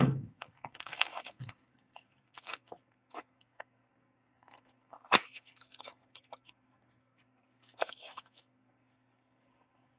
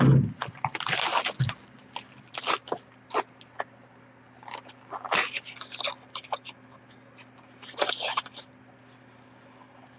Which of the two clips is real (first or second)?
second